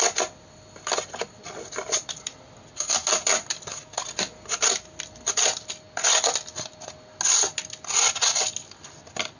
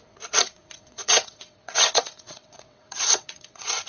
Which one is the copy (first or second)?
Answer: second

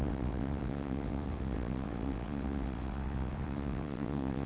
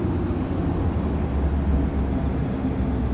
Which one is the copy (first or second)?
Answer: first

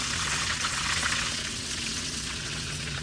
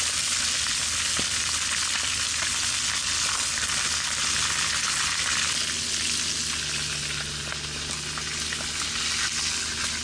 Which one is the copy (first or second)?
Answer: first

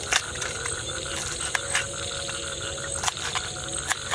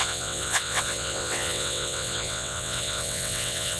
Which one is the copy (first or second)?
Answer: second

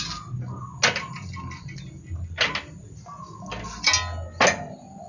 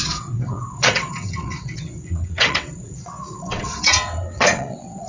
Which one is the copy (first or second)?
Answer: second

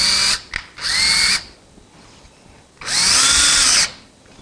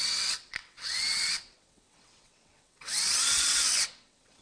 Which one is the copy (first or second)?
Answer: second